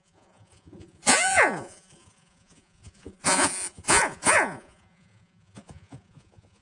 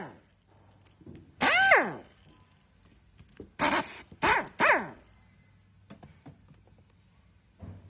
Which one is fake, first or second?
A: first